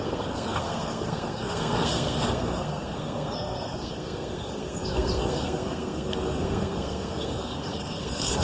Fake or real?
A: fake